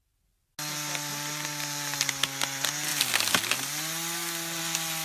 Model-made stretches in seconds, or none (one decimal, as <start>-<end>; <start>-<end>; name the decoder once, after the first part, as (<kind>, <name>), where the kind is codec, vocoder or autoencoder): 1.1-2.1 (vocoder, BigVGAN v2)